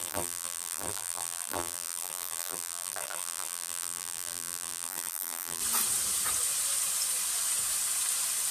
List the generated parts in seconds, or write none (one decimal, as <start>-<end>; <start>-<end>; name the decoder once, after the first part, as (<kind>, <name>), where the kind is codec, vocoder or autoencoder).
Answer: 0.0-5.6 (vocoder, BigVGAN v2)